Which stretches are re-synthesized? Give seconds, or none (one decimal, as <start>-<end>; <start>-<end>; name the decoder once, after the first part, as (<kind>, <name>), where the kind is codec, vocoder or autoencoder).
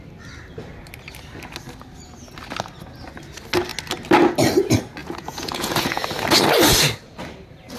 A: 5.0-6.0 (vocoder, Vocos)